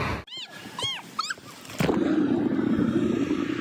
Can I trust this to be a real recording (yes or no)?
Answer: yes